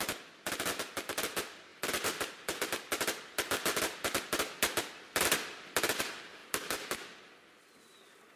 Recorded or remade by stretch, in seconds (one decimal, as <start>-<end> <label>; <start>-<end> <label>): 0.0-8.4 recorded